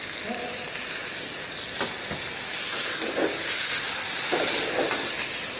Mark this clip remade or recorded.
recorded